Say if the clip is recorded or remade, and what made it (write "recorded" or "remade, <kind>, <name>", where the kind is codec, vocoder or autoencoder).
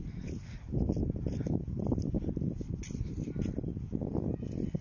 recorded